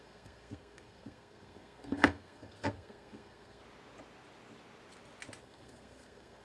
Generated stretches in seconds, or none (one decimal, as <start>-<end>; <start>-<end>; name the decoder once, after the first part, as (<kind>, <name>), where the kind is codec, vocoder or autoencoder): 0.0-3.6 (codec, SNAC); 5.4-6.4